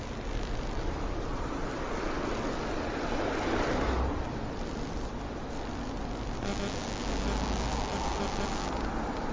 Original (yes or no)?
yes